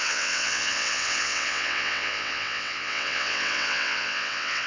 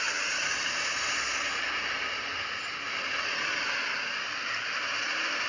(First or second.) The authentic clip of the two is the second